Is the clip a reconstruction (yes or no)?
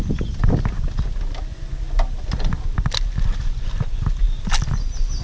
no